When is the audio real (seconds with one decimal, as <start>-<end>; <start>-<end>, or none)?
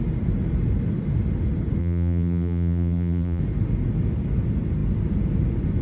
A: 0.0-1.8; 3.4-5.8